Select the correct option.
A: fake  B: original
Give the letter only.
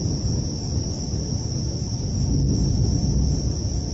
B